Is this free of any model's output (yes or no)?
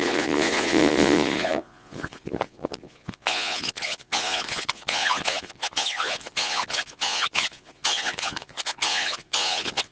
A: no